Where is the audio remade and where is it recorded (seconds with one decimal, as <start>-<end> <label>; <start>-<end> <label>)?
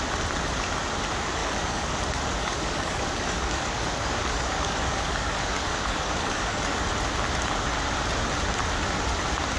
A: 0.0-1.4 recorded; 1.4-2.0 remade; 2.0-2.4 recorded; 2.4-6.8 remade; 6.8-9.6 recorded